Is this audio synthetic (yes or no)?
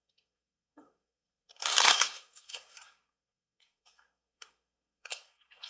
yes